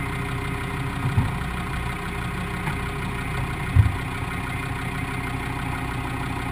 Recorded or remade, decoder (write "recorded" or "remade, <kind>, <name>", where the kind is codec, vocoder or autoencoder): recorded